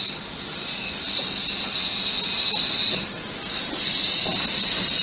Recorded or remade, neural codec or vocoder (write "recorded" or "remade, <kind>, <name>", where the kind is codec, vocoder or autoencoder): recorded